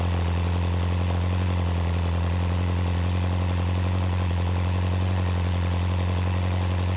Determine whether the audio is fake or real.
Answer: real